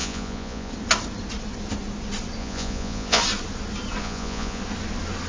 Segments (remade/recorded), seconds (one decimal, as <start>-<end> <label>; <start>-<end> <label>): 0.0-0.7 remade; 0.7-2.4 recorded; 2.4-3.2 remade; 3.2-4.0 recorded; 4.0-4.6 remade; 4.6-5.3 recorded